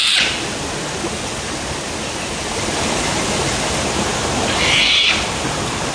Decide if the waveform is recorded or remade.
recorded